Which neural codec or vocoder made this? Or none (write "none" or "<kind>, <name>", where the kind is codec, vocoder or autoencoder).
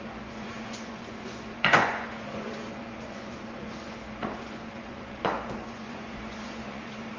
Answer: vocoder, Vocos